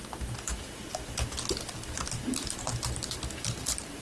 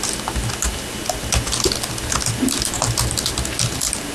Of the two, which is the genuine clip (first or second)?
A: second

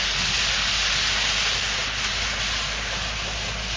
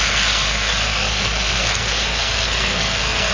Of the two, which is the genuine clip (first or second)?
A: first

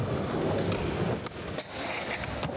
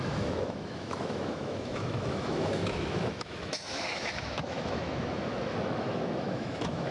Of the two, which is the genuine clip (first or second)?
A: first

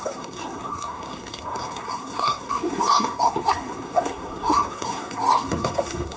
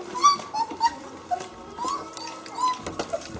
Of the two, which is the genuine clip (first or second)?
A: second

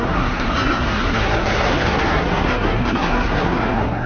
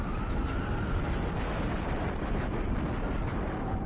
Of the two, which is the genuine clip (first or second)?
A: second